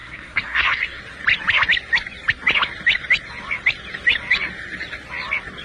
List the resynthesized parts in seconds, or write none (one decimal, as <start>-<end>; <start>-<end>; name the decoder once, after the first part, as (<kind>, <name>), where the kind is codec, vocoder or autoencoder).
0.0-1.0 (codec, SNAC)